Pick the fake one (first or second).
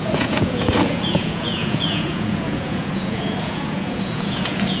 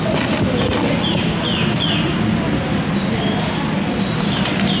first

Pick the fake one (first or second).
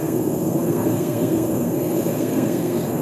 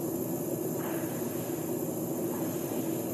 first